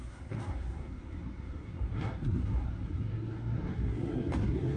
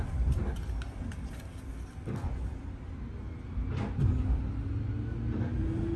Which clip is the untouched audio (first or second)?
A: second